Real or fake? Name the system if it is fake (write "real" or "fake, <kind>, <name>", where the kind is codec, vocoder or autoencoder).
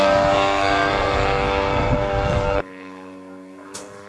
fake, codec, SNAC